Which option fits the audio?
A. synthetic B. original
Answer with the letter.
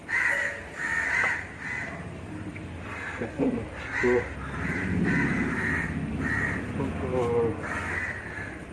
B